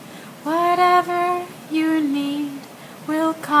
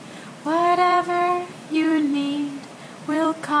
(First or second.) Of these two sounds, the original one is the first